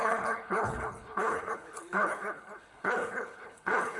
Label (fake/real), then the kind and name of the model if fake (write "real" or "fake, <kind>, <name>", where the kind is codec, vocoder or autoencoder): fake, codec, HILCodec